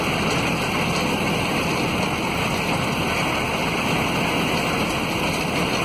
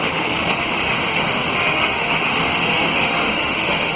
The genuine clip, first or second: first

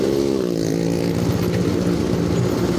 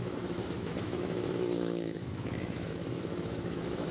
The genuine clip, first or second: first